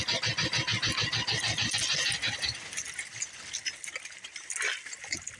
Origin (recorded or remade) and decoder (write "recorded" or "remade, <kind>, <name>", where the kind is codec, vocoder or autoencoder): recorded